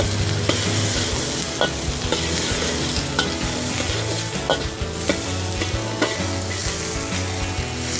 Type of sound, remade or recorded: recorded